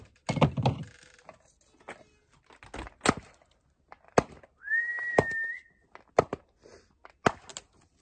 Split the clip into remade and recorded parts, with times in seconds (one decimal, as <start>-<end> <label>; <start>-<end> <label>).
0.0-8.0 recorded